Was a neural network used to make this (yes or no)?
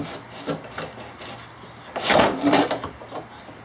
no